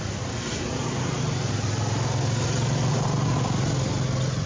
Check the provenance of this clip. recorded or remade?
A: recorded